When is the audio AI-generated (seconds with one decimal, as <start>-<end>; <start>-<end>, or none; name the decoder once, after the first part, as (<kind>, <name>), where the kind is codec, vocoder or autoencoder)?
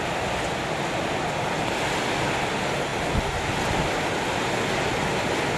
none